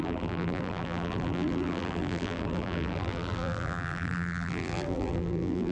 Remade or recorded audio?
remade